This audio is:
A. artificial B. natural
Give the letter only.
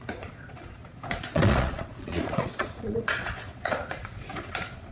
A